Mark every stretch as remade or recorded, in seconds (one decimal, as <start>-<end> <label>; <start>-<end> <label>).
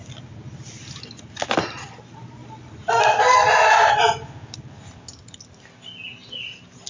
0.0-3.4 recorded; 3.4-5.0 remade; 5.0-6.9 recorded